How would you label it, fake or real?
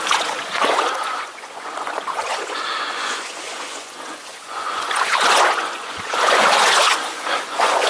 fake